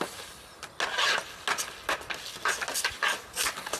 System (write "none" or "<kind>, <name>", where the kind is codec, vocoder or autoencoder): none